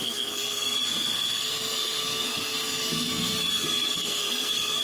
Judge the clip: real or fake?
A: fake